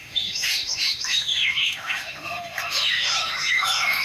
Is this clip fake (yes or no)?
yes